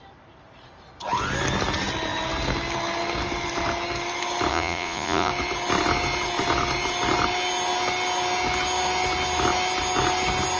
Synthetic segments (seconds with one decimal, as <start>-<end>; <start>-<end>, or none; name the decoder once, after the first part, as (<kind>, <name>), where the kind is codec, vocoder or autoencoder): 4.5-5.3 (vocoder, Vocos)

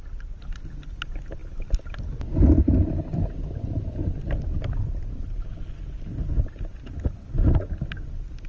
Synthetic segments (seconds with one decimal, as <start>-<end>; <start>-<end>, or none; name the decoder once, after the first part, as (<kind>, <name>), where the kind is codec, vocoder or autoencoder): none

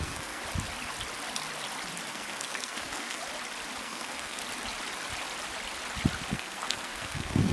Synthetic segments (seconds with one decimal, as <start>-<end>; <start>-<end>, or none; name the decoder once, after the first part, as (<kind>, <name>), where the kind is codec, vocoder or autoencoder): 0.0-0.4 (codec, SNAC); 2.1-3.2; 3.8-4.4; 6.3-7.5